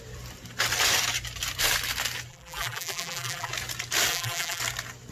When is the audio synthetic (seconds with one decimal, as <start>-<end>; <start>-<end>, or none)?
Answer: 2.3-3.5; 4.1-4.6